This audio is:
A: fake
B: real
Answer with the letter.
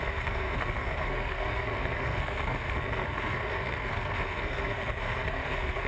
A